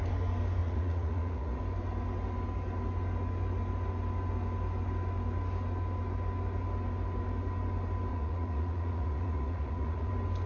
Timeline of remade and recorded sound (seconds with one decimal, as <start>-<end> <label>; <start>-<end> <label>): 0.0-0.6 recorded; 0.6-1.6 remade; 1.6-8.1 recorded; 8.1-10.1 remade; 10.1-10.5 recorded